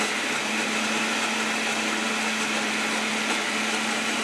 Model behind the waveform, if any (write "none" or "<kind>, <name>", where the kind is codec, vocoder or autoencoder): none